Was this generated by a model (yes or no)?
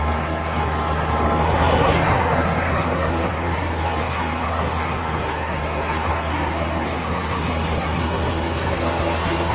yes